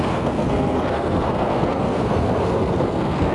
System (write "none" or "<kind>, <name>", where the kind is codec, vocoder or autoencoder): codec, SNAC